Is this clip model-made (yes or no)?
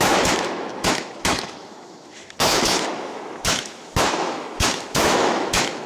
yes